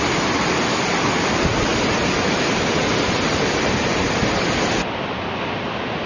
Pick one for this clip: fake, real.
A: real